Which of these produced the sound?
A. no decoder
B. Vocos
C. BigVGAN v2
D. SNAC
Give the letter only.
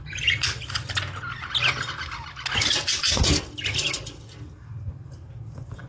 A